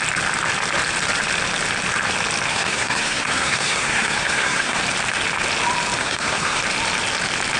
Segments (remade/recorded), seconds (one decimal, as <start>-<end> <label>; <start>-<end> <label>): 0.0-2.5 recorded; 2.5-4.8 remade; 4.8-6.0 recorded; 6.0-6.6 remade; 6.6-7.6 recorded